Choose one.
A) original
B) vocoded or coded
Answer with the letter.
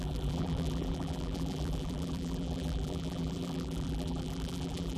B